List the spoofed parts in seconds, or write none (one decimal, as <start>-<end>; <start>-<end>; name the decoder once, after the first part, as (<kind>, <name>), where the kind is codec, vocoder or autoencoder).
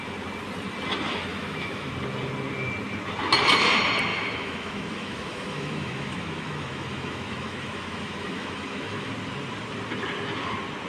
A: 1.3-1.9 (autoencoder, DAC-VAE); 4.1-9.1